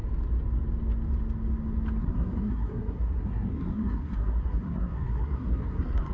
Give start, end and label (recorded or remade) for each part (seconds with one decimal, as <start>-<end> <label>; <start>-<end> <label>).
0.0-2.0 recorded; 2.0-6.1 remade